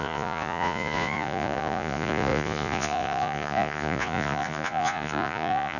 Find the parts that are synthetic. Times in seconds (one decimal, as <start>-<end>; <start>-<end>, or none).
0.0-5.8

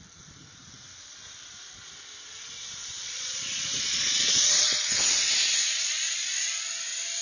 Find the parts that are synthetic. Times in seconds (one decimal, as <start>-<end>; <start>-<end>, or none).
2.8-5.3

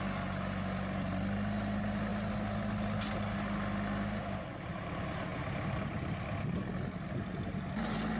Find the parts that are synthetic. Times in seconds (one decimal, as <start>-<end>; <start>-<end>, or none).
none

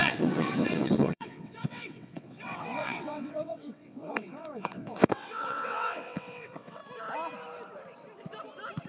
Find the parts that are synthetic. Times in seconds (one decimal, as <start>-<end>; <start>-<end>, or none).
0.0-6.8

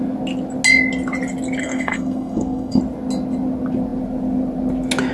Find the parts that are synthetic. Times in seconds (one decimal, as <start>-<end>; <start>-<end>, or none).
1.6-2.8